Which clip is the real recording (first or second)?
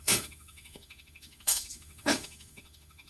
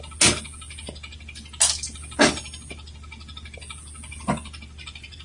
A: second